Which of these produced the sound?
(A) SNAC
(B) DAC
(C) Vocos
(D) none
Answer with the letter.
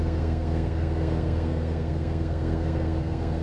A